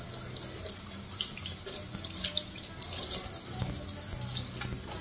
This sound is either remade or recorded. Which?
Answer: recorded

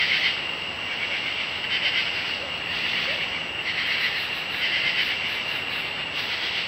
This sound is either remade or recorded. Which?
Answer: recorded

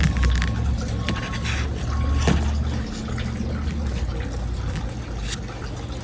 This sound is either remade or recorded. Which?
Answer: recorded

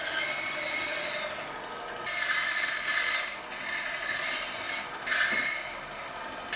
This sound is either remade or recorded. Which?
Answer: recorded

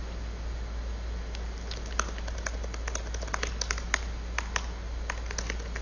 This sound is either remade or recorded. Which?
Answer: recorded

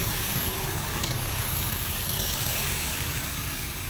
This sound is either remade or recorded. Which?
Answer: remade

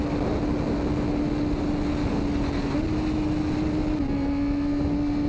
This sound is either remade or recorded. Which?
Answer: recorded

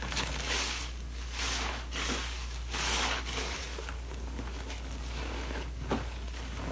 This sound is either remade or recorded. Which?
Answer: remade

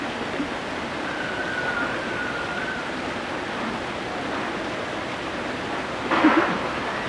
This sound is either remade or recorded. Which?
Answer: recorded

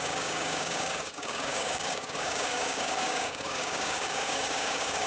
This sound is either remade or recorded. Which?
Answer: remade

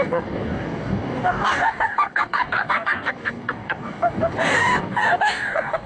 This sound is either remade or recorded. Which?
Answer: remade